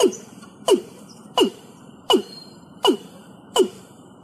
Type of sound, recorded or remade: remade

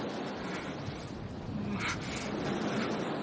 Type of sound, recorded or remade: recorded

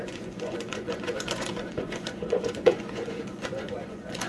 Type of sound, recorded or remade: remade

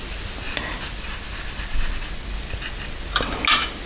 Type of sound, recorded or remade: recorded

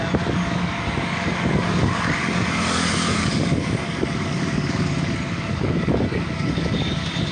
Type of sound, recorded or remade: remade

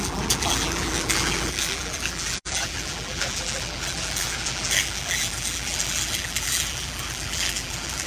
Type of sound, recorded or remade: remade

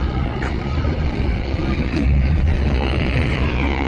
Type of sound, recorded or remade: remade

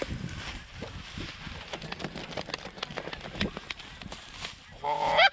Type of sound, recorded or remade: recorded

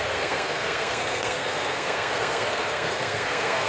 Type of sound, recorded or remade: remade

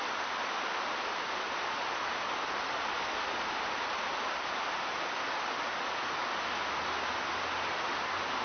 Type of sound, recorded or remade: recorded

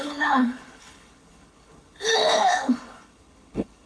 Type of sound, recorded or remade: remade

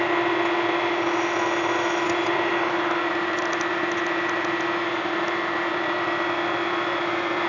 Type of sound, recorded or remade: recorded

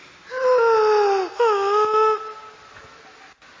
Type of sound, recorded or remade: recorded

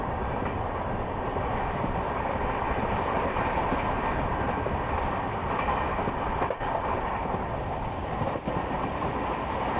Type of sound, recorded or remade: recorded